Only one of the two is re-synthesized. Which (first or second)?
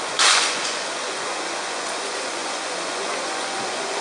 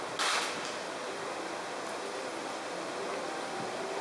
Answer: first